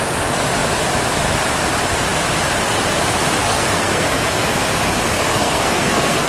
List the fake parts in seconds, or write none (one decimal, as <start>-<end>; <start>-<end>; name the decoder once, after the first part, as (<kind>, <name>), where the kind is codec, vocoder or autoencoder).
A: 3.4-4.7 (codec, SNAC); 5.3-6.3